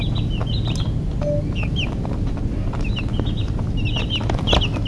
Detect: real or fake real